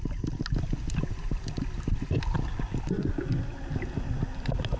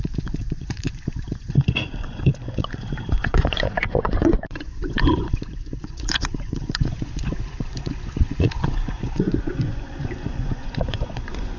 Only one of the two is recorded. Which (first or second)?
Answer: first